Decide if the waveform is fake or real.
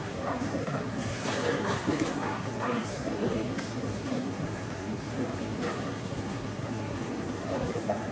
fake